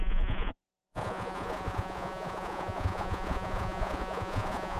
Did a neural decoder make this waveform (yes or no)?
yes